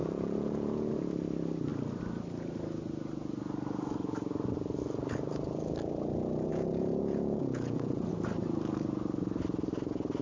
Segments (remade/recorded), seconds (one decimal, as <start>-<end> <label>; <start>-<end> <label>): 0.0-0.9 remade; 0.9-6.5 recorded; 6.5-8.1 remade; 8.1-10.2 recorded